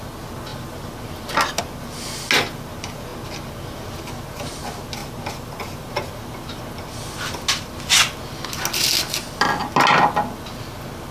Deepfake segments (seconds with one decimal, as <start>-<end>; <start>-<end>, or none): none